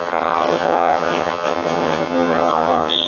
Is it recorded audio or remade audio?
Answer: remade